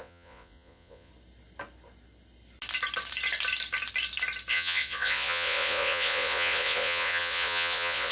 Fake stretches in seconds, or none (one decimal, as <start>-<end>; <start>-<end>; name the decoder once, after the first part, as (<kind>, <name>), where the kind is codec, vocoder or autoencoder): 0.0-1.1 (vocoder, Vocos); 4.5-8.1